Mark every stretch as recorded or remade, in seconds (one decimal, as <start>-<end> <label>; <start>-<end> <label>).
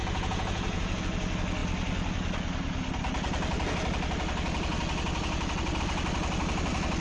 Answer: 0.0-1.0 remade; 1.0-7.0 recorded